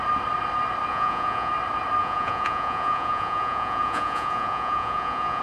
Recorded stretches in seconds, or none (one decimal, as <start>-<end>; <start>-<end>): 0.0-0.9; 1.5-2.0